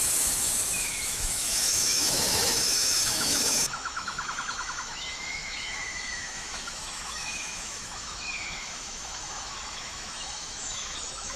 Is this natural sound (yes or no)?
no